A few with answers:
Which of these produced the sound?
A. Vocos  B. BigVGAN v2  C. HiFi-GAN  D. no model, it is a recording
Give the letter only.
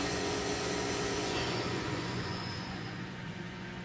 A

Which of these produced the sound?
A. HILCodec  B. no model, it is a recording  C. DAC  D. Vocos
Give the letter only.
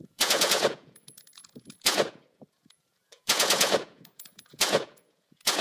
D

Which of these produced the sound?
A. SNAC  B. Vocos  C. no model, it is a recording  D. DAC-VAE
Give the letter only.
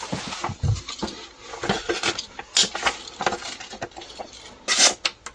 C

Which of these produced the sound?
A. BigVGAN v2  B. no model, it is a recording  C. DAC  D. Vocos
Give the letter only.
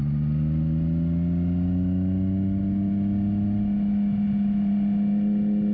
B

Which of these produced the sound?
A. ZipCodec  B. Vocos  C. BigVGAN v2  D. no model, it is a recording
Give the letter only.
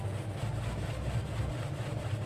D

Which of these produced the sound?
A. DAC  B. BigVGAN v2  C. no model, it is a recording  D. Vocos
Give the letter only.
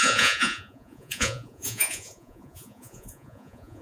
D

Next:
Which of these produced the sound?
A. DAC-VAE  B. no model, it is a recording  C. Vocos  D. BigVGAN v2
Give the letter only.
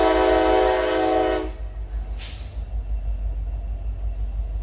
B